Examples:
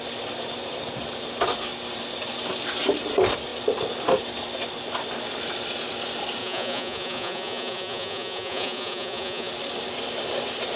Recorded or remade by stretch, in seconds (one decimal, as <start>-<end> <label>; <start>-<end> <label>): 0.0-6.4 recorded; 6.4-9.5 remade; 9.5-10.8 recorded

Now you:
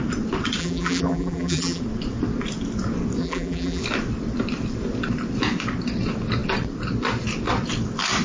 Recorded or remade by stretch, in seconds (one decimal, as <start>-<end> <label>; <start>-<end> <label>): 0.0-0.6 recorded; 0.6-1.8 remade; 1.8-3.2 recorded; 3.2-3.8 remade; 3.8-8.2 recorded

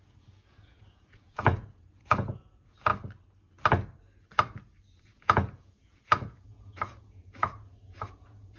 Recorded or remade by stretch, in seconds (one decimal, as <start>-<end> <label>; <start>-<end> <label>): 0.0-2.9 remade; 2.9-5.0 recorded; 5.0-8.6 remade